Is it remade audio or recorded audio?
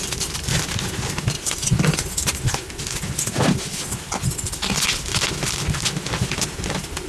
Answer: recorded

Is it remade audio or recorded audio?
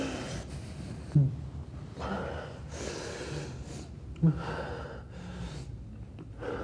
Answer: recorded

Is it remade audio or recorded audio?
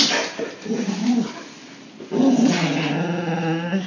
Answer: recorded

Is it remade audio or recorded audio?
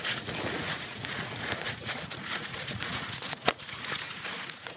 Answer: remade